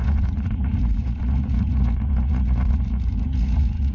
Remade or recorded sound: remade